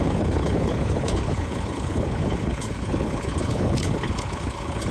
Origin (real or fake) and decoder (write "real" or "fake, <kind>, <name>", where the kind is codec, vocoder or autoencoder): fake, codec, HILCodec